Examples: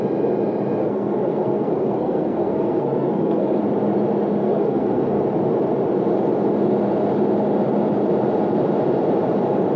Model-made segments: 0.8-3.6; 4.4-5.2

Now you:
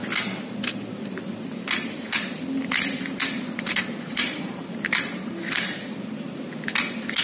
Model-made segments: 0.0-7.2

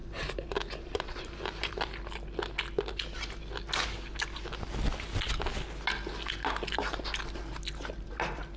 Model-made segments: 0.0-1.7

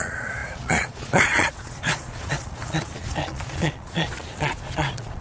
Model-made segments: 0.0-5.2

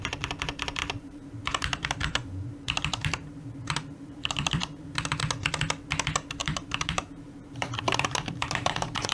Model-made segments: 0.8-5.2; 6.4-9.1

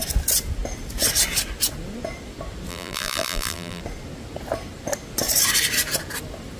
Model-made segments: 2.7-3.8

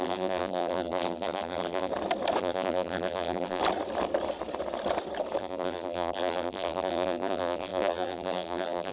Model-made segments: 0.0-1.9; 2.4-3.6; 5.4-8.9